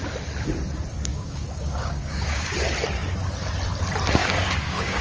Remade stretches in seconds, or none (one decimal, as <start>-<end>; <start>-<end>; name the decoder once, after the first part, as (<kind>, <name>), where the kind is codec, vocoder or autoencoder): 1.1-2.5 (codec, DAC); 4.2-5.0